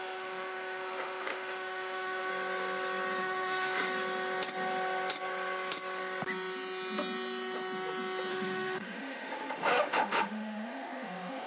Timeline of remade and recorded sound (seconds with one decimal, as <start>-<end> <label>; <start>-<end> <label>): 0.0-2.3 remade; 2.3-3.2 recorded; 3.2-3.8 remade; 3.8-8.3 recorded; 8.3-11.5 remade